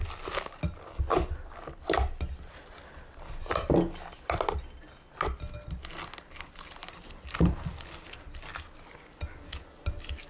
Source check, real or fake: real